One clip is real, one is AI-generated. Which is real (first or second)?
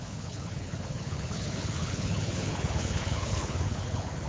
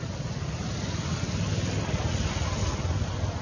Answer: second